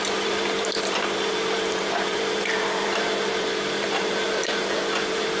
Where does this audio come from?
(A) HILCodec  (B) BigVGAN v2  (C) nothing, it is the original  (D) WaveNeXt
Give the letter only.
B